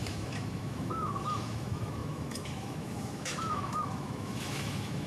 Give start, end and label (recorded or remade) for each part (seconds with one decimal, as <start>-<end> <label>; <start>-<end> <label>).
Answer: 0.0-5.1 remade